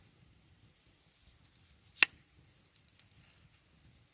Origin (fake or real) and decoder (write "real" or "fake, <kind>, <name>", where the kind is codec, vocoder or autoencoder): real